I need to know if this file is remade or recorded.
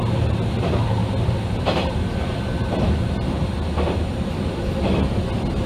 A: recorded